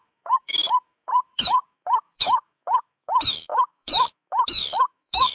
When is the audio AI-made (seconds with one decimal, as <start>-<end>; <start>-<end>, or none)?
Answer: 0.0-5.3